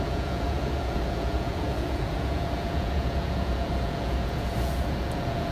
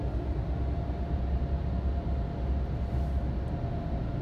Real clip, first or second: second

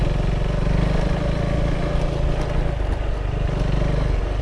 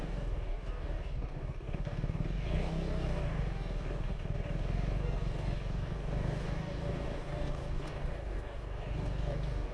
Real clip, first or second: first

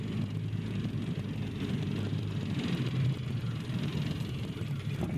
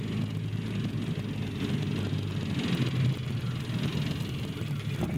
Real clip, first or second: second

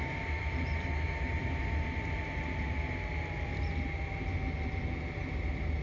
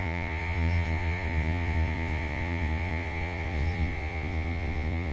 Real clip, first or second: first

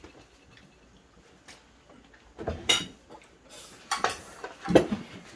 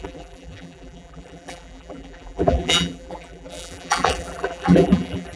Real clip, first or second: first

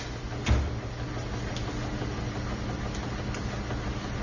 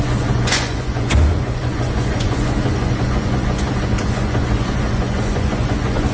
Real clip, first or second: first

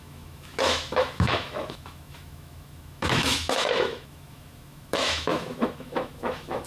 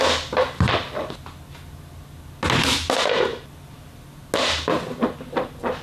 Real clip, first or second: second